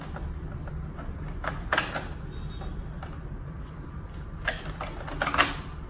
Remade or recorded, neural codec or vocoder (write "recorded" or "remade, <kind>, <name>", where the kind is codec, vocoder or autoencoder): recorded